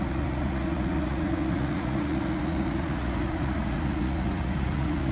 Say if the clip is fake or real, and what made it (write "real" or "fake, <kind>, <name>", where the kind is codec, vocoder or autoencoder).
fake, vocoder, Vocos